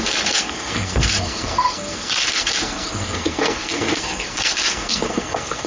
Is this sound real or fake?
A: fake